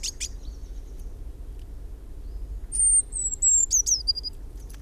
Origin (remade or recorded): recorded